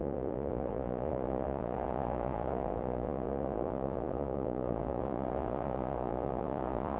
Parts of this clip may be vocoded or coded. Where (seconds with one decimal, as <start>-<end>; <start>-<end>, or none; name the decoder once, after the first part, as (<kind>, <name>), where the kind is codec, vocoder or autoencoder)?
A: 0.0-7.0 (vocoder, Vocos)